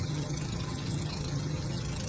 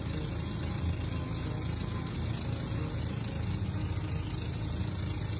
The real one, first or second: second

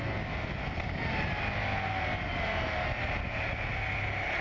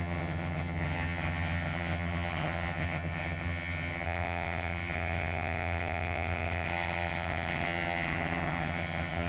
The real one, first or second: first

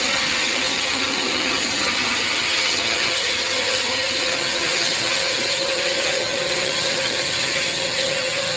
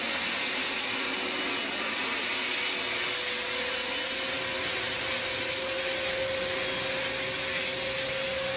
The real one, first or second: second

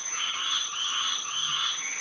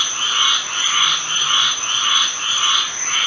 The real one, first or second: second